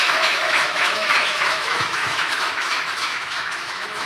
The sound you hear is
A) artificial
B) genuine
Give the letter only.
A